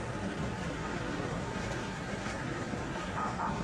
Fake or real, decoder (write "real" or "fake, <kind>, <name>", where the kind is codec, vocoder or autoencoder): fake, codec, SNAC